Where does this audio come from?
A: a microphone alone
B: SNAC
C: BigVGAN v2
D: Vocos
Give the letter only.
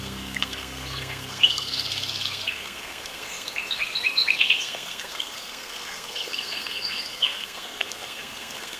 B